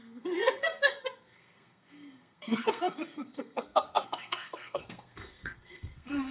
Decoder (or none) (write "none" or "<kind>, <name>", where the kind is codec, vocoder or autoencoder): codec, SNAC